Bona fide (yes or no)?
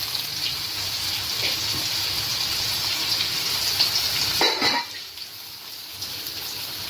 no